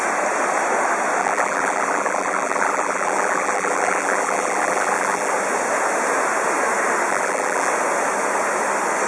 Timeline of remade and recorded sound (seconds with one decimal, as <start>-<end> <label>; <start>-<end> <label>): 0.0-1.2 recorded; 1.2-5.3 remade; 5.3-7.1 recorded; 7.1-7.7 remade; 7.7-9.1 recorded